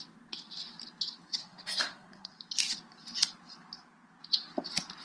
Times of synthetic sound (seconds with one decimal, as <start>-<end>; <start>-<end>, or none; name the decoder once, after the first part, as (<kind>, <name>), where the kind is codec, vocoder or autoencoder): 1.4-2.3 (codec, SNAC)